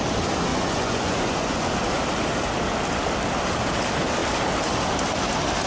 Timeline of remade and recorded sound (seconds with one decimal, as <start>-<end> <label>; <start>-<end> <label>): 0.0-0.5 recorded; 0.5-1.7 remade; 1.7-5.7 recorded